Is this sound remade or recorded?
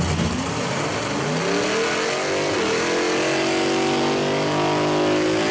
recorded